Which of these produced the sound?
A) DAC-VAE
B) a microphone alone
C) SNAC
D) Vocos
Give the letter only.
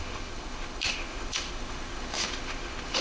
A